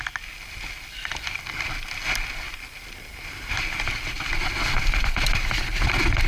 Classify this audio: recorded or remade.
recorded